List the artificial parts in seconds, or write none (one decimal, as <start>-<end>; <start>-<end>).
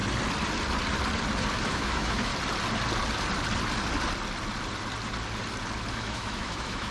1.6-2.3; 5.9-6.9